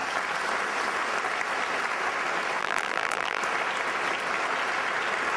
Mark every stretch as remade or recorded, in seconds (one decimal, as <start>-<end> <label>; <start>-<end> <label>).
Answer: 0.0-2.6 recorded; 2.6-3.4 remade; 3.4-5.4 recorded